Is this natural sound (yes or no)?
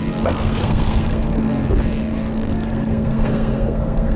no